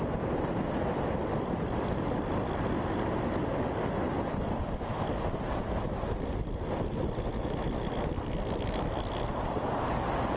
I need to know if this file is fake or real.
real